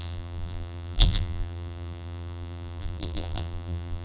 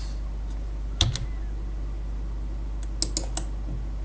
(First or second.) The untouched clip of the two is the second